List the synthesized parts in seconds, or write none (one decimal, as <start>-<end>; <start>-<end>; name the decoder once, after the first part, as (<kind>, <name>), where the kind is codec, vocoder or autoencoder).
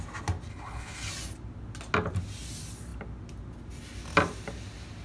0.5-1.1 (codec, HILCodec)